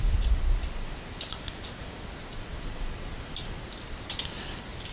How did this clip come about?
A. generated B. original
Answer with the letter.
B